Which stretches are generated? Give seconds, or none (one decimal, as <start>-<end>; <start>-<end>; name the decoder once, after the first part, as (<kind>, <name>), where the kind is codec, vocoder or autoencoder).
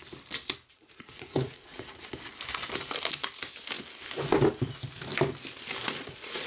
0.7-2.1 (vocoder, Vocos); 6.0-6.5